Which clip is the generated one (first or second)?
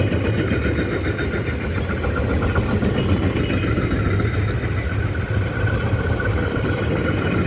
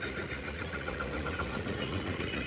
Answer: second